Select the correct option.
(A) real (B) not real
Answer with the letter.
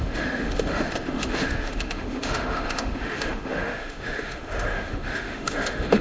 B